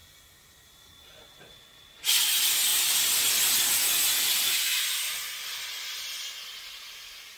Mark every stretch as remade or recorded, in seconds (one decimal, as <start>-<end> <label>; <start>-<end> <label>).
0.0-2.7 recorded; 2.7-4.8 remade; 4.8-7.4 recorded